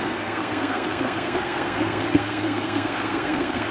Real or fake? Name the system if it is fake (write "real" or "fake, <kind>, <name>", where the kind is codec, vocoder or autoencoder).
fake, codec, SNAC